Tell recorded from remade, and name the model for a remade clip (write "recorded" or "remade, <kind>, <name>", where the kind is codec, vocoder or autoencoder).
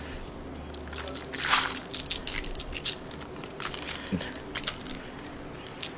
recorded